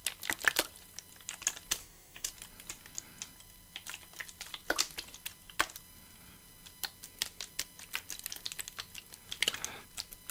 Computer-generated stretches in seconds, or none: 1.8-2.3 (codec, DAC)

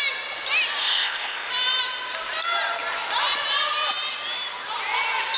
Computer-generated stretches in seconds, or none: 0.8-1.5 (codec, ZipCodec)

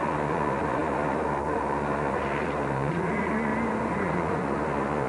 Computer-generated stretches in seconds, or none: 0.0-3.5 (vocoder, Vocos); 4.0-5.1

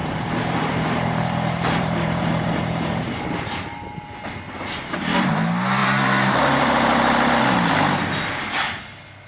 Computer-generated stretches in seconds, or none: 0.0-4.0 (vocoder, BigVGAN v2); 5.8-7.3

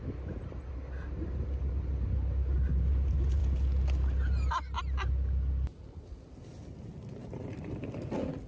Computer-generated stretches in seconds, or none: 7.2-7.8 (vocoder, BigVGAN v2)